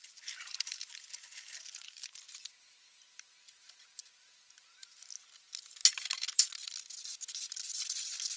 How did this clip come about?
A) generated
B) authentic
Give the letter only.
B